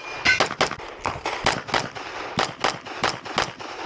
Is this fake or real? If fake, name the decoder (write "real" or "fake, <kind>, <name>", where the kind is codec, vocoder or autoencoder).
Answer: real